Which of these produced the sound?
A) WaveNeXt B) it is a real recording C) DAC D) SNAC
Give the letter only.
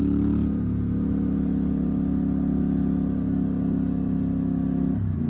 B